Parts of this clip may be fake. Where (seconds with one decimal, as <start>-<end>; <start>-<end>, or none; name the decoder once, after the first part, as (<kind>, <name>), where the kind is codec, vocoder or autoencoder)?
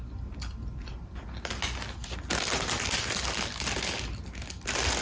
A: none